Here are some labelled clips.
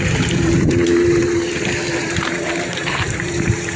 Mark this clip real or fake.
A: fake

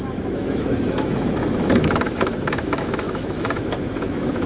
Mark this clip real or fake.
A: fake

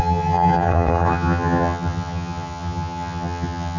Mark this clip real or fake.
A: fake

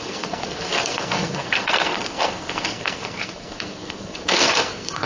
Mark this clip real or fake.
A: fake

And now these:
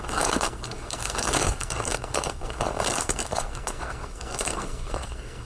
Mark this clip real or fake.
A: fake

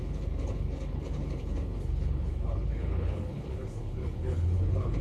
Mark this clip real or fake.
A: fake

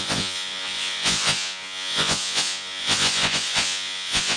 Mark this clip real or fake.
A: fake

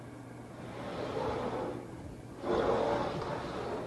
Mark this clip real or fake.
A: real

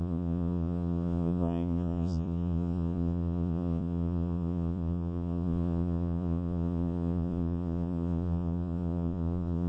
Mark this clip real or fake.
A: fake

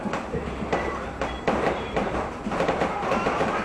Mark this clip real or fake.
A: fake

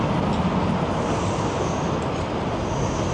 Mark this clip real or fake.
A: real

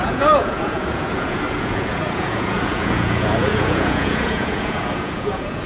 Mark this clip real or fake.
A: fake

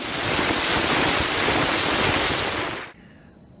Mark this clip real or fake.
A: real